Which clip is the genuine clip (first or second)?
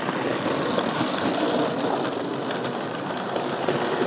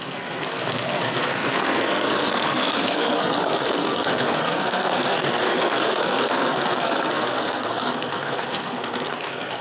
first